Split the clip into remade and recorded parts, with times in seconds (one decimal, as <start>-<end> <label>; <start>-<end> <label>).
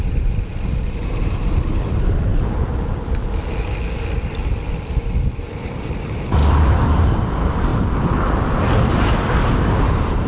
0.0-2.3 remade; 2.3-5.2 recorded; 5.2-6.4 remade; 6.4-6.9 recorded; 6.9-7.7 remade; 7.7-8.9 recorded; 8.9-10.3 remade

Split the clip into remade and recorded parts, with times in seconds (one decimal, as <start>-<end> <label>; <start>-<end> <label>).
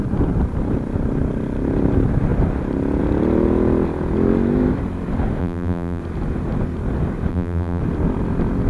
0.0-5.4 recorded; 5.4-6.0 remade; 6.0-7.3 recorded; 7.3-7.8 remade; 7.8-8.7 recorded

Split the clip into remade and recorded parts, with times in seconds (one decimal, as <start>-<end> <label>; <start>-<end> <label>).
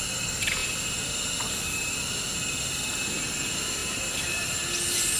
0.0-3.8 recorded; 3.8-5.2 remade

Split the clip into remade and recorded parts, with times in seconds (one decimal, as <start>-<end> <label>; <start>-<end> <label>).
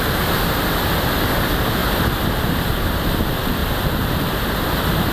0.0-3.6 recorded; 3.6-4.5 remade; 4.5-5.1 recorded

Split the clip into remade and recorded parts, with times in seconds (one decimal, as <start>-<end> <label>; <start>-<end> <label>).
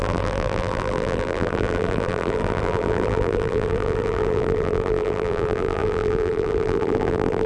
0.0-7.5 remade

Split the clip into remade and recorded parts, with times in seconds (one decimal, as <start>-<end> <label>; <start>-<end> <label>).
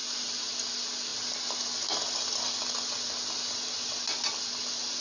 0.0-0.5 remade; 0.5-1.1 recorded; 1.1-3.1 remade; 3.1-5.0 recorded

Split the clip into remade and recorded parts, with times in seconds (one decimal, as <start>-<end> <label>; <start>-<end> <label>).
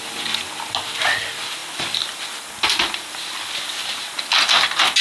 0.0-5.0 recorded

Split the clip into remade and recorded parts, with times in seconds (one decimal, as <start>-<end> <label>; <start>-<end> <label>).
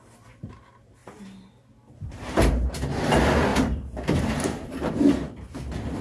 0.0-3.5 recorded; 3.5-4.9 remade; 4.9-6.0 recorded